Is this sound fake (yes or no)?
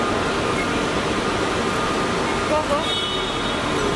no